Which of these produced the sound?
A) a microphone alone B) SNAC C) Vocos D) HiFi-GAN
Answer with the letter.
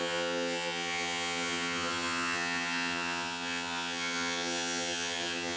D